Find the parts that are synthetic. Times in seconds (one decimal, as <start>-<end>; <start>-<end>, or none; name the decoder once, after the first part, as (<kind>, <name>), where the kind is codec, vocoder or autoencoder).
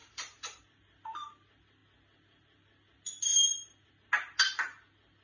0.0-0.6 (vocoder, BigVGAN v2)